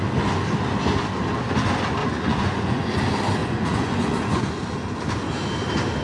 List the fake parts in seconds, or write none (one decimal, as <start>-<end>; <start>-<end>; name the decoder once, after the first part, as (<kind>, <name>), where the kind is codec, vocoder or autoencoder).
2.0-3.0 (vocoder, Vocos); 3.4-4.5